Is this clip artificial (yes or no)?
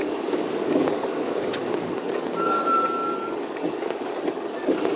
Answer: yes